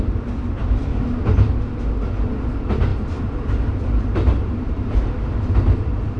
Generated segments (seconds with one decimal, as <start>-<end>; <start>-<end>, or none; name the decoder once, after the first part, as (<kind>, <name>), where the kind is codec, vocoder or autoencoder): 2.9-5.2 (vocoder, BigVGAN v2)